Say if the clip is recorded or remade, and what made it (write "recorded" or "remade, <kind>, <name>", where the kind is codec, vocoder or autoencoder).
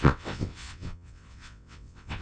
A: remade, vocoder, WaveNeXt